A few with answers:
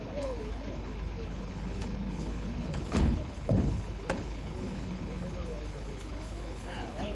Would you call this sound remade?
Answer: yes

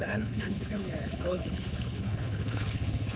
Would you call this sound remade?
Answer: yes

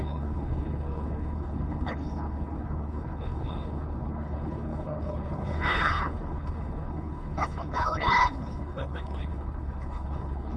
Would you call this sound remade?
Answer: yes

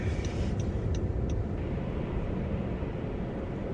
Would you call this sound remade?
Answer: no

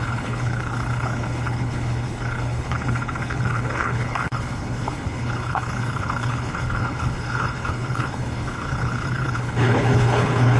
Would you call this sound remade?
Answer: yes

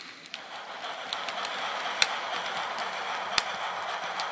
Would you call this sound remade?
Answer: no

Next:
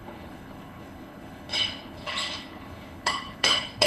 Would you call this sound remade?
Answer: yes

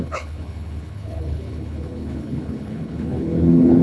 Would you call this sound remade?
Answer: yes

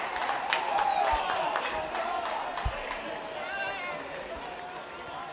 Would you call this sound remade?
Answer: no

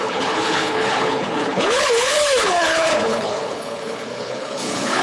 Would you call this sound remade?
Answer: yes